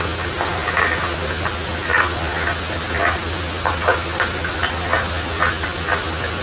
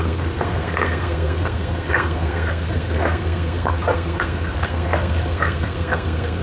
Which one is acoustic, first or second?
first